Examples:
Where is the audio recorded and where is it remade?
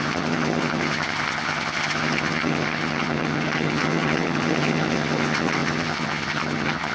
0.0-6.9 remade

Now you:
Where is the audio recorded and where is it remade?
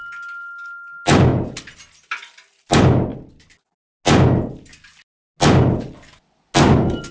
0.0-7.1 recorded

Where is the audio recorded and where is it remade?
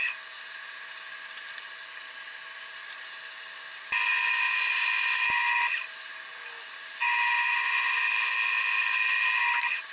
0.0-9.9 recorded